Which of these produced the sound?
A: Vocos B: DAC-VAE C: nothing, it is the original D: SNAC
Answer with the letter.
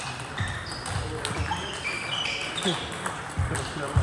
C